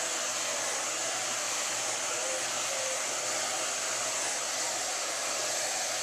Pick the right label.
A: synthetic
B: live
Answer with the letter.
B